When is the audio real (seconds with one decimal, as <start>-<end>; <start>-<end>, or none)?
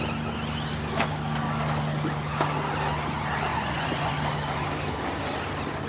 0.0-3.5; 4.1-5.9